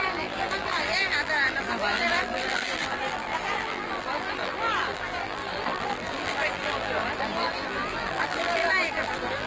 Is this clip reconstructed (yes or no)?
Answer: yes